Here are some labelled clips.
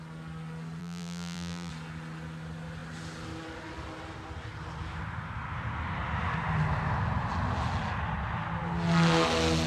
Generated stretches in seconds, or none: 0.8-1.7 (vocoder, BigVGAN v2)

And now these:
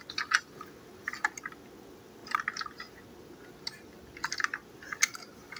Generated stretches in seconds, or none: none

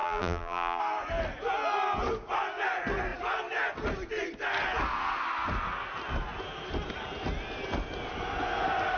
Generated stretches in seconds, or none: 0.0-0.8 (vocoder, BigVGAN v2)

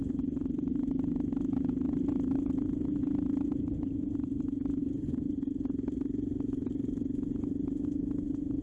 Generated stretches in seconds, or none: 0.4-0.9 (vocoder, BigVGAN v2)

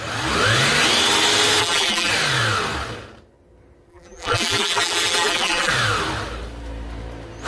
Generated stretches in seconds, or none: 1.6-2.1 (vocoder, BigVGAN v2); 3.9-5.7

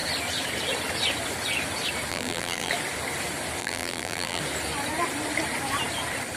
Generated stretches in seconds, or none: 2.1-2.7 (vocoder, BigVGAN v2); 3.6-4.4

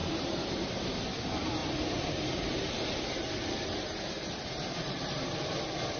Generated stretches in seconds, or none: 0.0-0.8 (vocoder, BigVGAN v2); 1.6-5.2

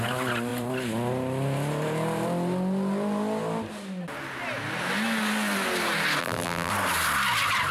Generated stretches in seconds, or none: 6.2-6.7 (vocoder, BigVGAN v2)